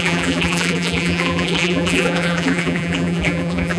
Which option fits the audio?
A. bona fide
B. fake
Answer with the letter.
B